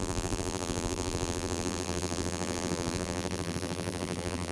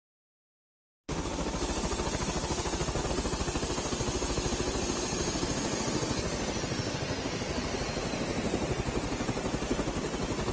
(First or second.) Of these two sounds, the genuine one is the second